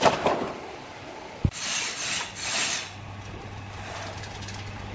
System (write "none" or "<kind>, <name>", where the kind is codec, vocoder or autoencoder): none